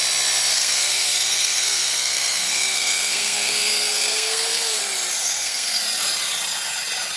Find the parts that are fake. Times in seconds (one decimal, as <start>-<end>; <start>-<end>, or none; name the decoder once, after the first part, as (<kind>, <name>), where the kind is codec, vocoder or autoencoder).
0.5-4.8 (codec, SNAC); 5.2-5.8